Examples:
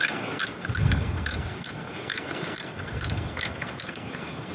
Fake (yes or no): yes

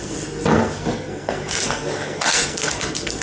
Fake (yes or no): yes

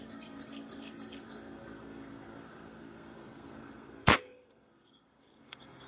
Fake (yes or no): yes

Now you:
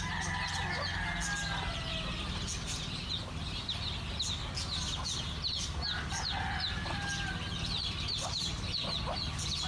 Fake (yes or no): no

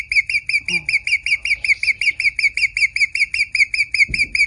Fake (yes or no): no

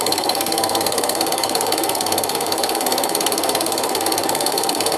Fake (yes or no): yes